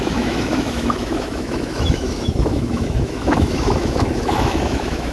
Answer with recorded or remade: remade